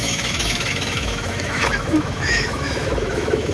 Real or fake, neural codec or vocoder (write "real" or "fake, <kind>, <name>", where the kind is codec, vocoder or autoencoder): fake, autoencoder, DAC-VAE